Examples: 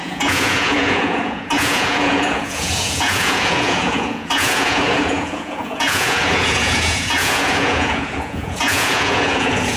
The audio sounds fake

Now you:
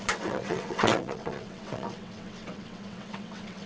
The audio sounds fake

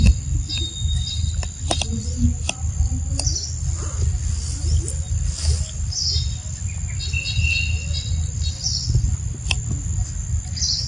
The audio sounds real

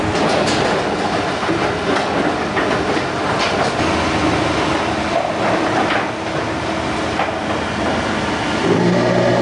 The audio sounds real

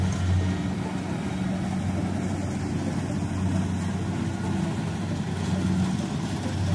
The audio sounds real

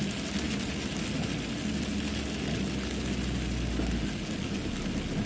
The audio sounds real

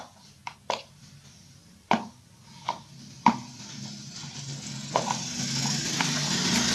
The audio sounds real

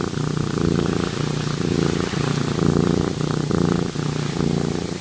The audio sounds real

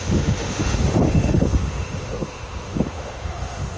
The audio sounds fake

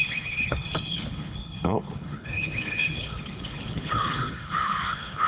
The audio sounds fake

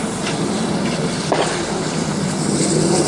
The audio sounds real